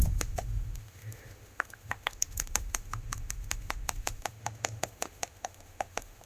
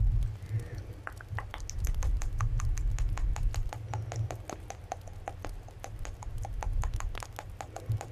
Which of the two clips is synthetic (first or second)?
first